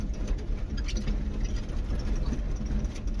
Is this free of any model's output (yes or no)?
yes